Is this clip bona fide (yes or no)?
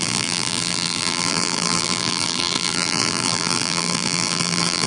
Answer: no